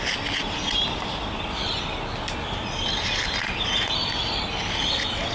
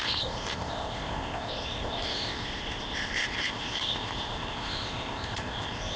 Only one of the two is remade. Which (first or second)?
second